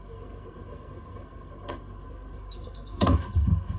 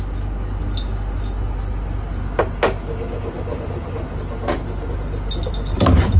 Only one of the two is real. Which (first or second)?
second